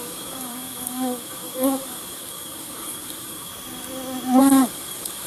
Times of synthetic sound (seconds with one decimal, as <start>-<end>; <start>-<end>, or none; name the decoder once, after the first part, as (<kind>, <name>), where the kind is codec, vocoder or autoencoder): 0.0-3.5 (codec, DAC); 4.4-5.3